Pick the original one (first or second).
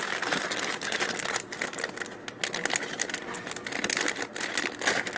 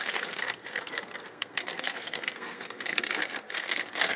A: first